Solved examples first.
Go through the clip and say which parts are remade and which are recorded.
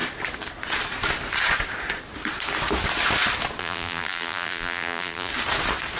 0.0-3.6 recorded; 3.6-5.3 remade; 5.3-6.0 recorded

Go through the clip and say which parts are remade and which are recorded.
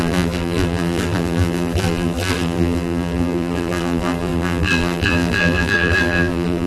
0.0-6.7 remade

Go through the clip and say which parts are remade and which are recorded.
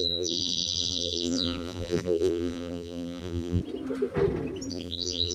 0.0-3.6 remade; 3.6-4.7 recorded; 4.7-5.3 remade